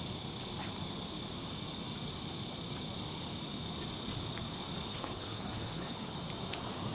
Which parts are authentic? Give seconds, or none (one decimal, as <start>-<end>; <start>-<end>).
0.0-4.9; 6.1-6.9